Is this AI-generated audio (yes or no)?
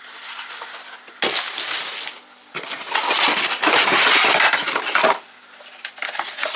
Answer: no